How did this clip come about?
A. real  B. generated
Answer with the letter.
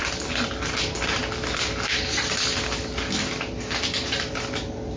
A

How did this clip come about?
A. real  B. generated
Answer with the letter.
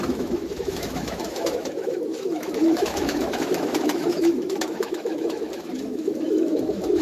B